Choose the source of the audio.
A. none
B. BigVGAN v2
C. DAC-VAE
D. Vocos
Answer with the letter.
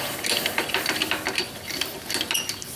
A